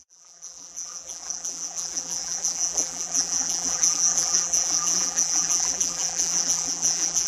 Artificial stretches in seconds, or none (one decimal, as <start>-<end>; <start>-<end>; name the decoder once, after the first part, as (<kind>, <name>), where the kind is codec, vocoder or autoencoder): 0.0-7.3 (vocoder, BigVGAN v2)